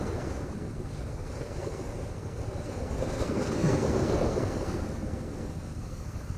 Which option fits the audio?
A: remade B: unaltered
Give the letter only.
A